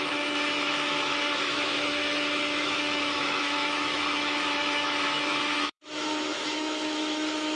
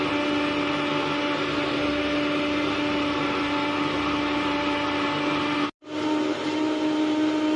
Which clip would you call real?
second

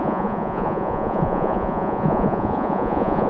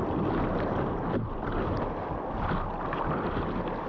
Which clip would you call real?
second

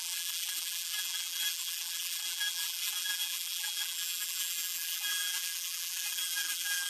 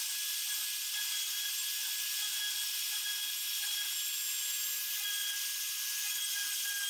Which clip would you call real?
second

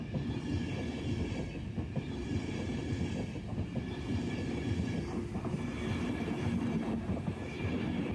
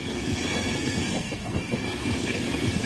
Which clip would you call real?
first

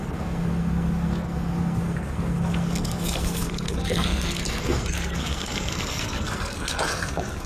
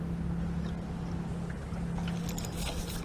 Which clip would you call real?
second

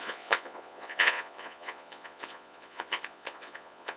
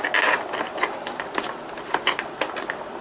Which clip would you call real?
second